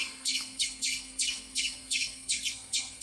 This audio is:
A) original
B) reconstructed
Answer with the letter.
B